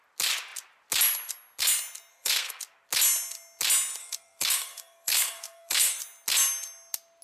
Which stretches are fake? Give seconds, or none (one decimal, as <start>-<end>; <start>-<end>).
2.1-2.6; 4.0-6.0